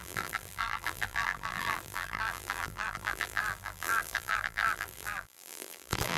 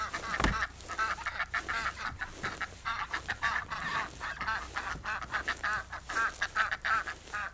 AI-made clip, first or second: first